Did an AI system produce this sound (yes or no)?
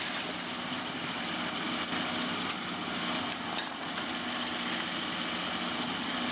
no